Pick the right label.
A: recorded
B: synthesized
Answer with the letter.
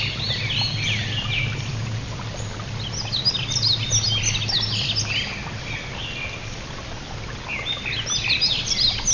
A